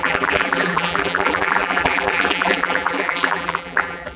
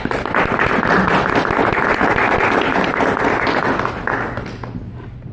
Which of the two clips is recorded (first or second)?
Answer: second